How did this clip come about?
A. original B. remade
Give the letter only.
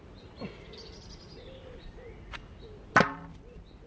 A